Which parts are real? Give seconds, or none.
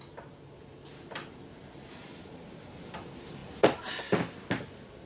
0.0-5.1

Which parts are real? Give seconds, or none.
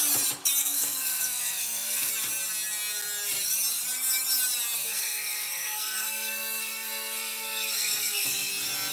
0.0-0.6; 2.1-4.8; 8.5-8.9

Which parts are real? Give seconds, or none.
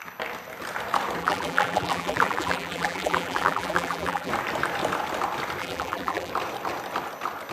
0.0-1.2; 4.3-5.6; 6.3-7.5